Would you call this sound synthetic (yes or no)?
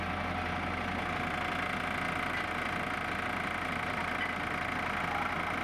no